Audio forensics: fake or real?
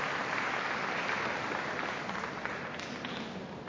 real